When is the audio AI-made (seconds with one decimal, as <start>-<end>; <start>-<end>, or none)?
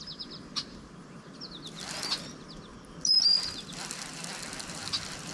none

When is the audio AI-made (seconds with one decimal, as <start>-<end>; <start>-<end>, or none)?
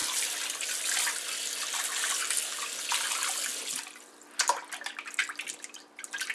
none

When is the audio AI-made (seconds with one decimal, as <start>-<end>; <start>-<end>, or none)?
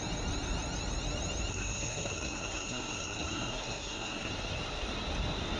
1.5-4.3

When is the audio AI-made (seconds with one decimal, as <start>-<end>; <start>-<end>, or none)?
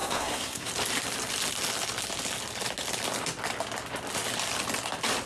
0.0-0.7